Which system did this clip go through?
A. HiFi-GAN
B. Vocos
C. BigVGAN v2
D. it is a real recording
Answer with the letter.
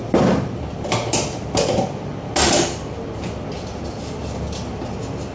D